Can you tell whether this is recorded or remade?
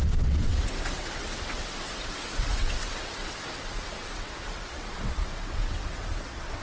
remade